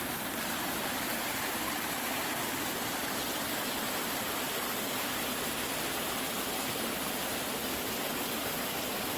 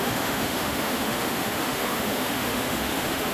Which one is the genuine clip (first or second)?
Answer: first